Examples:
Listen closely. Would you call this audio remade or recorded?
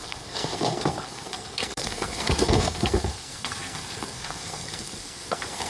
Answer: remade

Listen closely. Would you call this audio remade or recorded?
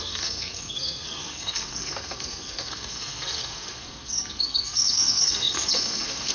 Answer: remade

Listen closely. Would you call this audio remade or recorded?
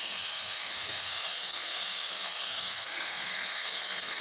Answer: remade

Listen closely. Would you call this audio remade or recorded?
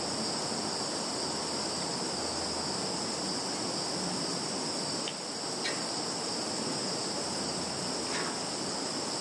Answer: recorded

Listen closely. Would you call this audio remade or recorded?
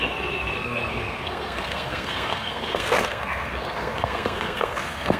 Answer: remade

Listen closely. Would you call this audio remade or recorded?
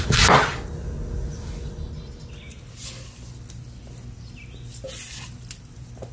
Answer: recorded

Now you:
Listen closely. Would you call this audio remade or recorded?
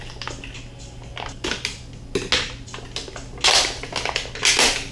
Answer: recorded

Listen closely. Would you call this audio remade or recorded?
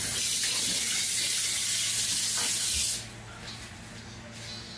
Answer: recorded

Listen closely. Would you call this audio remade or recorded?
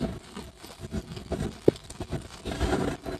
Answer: recorded